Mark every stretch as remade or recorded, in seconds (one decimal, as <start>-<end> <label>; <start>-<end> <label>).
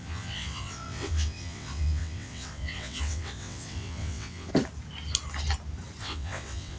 0.0-4.5 remade; 4.5-6.0 recorded; 6.0-6.8 remade